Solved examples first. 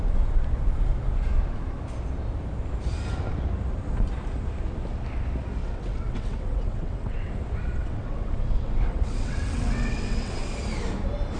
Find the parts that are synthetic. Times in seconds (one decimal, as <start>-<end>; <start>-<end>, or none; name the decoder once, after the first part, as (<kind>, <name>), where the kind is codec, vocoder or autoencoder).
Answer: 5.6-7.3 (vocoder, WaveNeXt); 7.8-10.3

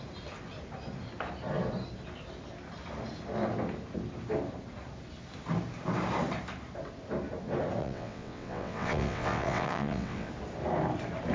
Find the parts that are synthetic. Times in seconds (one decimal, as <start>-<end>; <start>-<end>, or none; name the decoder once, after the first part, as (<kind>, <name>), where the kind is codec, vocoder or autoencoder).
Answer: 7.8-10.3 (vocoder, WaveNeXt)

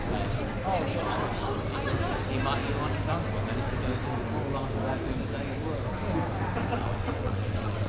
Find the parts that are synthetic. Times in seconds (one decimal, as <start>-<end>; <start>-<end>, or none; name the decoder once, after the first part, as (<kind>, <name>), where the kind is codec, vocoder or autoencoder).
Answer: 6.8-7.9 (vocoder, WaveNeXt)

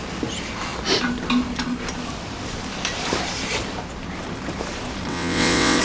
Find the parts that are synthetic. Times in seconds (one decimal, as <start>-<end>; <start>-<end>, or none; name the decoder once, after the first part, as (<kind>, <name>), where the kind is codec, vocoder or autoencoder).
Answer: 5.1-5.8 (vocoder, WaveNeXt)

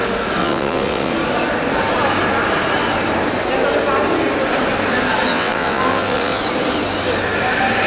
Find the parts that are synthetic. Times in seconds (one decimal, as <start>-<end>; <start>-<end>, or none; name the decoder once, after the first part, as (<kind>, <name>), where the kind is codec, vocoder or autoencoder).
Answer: 0.4-1.1 (vocoder, WaveNeXt); 5.3-6.4

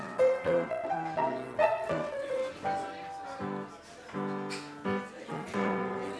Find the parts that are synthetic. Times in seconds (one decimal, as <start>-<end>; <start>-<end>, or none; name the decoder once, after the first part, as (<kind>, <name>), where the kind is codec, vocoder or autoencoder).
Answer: 0.0-2.4 (vocoder, WaveNeXt); 5.2-6.2

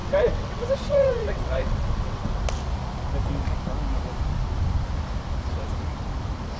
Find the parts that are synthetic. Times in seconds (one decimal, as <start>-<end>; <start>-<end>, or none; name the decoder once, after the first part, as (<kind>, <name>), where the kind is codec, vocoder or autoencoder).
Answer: 0.0-2.4 (vocoder, WaveNeXt)